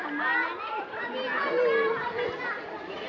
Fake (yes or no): no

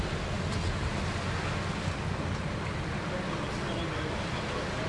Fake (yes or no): no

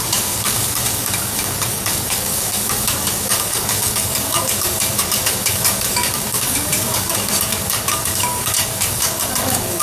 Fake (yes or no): yes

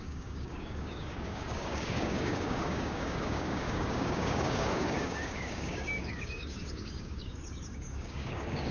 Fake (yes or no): yes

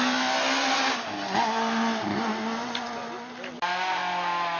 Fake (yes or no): no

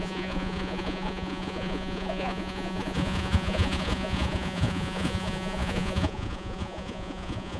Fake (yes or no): yes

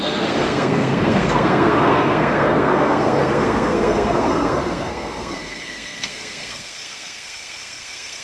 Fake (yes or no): yes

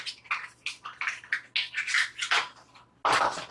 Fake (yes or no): no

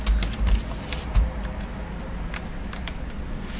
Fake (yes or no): no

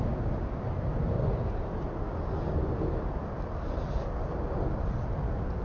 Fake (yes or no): no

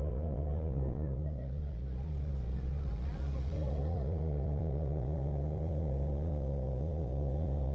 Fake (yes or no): yes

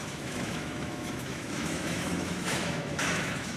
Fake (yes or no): yes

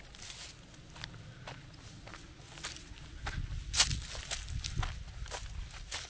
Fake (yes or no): no